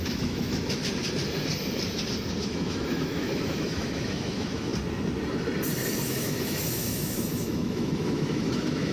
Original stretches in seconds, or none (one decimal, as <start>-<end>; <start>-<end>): 0.8-2.4; 4.7-6.1

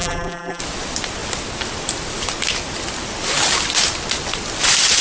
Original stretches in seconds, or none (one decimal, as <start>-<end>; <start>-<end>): 0.6-5.0

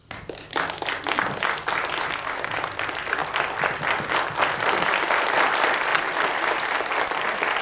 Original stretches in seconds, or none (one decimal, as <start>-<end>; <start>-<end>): 0.0-7.6